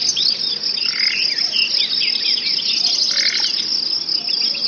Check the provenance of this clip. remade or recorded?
recorded